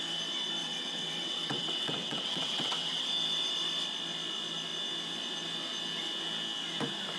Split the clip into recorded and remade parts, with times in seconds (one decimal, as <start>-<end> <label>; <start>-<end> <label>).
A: 0.0-0.6 recorded; 0.6-3.0 remade; 3.0-7.2 recorded